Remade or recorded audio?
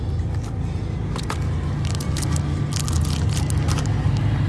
recorded